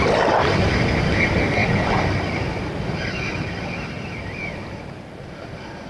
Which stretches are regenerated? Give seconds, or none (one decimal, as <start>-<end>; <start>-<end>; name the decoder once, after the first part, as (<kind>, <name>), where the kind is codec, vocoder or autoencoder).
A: none